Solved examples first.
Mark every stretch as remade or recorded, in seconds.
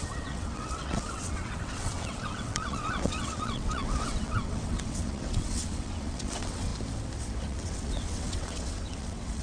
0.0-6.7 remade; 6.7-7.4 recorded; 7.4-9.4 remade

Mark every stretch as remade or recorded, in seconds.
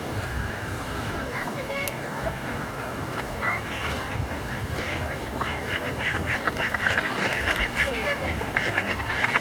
0.0-9.4 remade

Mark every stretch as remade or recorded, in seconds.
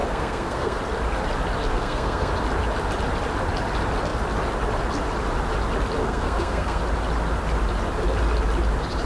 0.0-0.8 remade; 0.8-1.7 recorded; 1.7-2.3 remade; 2.3-6.0 recorded; 6.0-6.8 remade; 6.8-9.1 recorded